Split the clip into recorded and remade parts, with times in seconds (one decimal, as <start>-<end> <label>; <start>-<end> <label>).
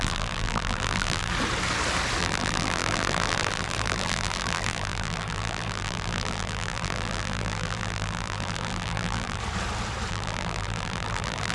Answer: 0.0-1.3 remade; 1.3-2.2 recorded; 2.2-9.4 remade; 9.4-10.1 recorded; 10.1-11.5 remade